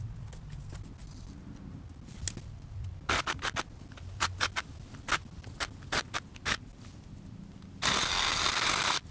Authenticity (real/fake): real